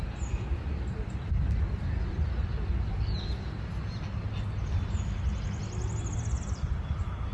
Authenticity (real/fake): real